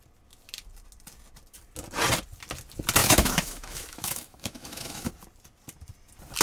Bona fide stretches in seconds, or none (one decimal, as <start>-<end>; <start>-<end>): 0.0-3.0; 5.1-6.4